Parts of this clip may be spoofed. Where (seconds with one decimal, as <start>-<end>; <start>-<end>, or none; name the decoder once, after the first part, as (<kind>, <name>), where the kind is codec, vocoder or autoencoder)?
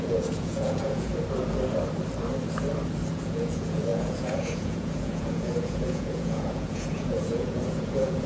0.0-1.1 (vocoder, Vocos); 3.1-8.3